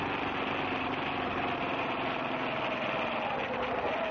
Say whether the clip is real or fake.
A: real